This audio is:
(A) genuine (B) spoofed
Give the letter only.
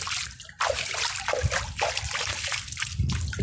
A